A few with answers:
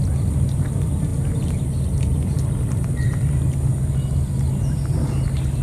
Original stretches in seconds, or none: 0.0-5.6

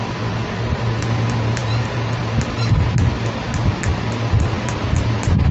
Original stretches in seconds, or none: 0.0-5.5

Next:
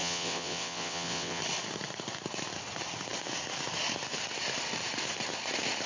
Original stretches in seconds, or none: 1.4-5.9

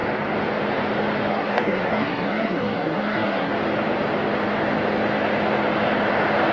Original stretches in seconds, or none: 0.0-1.3; 3.5-6.5